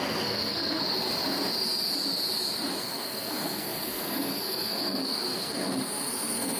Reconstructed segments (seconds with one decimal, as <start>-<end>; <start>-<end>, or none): 0.0-0.8; 2.8-6.6